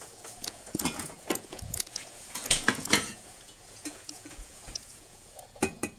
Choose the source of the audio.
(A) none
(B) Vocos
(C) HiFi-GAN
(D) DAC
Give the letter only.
B